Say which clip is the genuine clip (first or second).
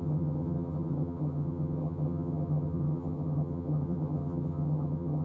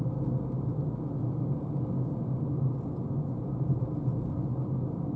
second